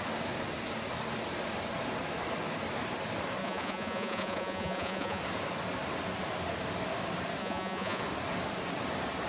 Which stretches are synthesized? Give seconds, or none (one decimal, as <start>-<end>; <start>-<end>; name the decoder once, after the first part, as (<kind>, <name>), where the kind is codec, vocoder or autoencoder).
3.4-5.2 (vocoder, Vocos); 7.4-8.0